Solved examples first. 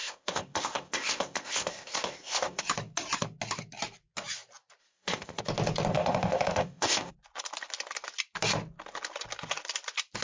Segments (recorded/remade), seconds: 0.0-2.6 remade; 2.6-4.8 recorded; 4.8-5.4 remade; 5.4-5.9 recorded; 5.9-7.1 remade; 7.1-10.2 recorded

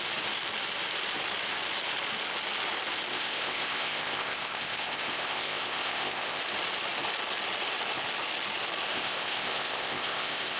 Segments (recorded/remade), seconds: 0.0-3.1 recorded; 3.1-6.4 remade; 6.4-8.9 recorded; 8.9-10.6 remade

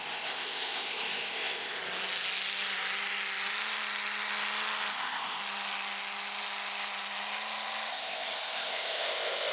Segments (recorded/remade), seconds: 0.0-1.8 remade; 1.8-4.9 recorded; 4.9-5.4 remade; 5.4-7.9 recorded; 7.9-9.5 remade